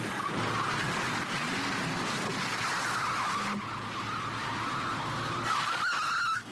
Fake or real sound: real